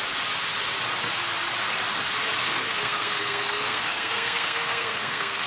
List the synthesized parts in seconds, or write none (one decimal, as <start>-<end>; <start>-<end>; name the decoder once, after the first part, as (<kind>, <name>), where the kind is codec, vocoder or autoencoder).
2.4-5.5 (codec, SNAC)